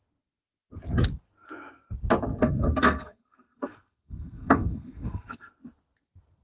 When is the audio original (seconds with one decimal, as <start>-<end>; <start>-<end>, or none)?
0.0-2.4; 5.5-6.4